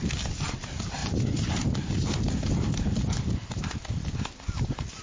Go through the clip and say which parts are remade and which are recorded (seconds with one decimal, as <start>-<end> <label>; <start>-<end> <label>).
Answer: 0.0-5.0 recorded